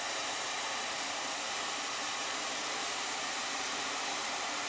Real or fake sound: fake